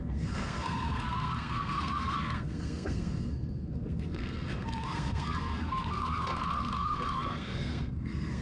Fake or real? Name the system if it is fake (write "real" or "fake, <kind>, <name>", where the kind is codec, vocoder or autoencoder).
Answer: fake, codec, SNAC